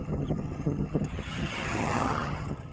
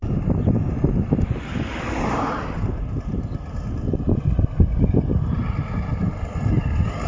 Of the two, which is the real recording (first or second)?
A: second